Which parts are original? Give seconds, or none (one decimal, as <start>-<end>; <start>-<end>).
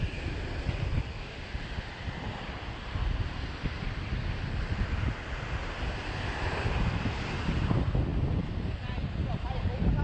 0.0-1.2; 1.9-10.0